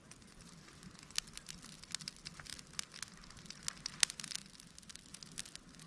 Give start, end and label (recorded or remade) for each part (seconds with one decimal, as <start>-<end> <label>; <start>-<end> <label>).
0.0-5.9 recorded